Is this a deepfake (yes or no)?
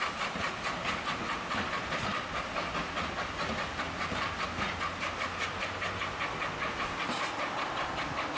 no